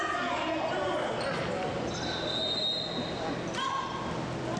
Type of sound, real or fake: real